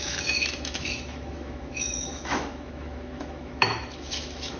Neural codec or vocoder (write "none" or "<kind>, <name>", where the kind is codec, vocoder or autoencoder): autoencoder, DAC-VAE